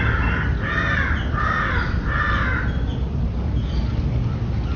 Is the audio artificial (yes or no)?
no